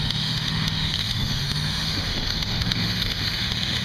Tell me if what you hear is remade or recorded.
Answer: remade